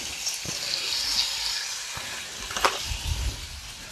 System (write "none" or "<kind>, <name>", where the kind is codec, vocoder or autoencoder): none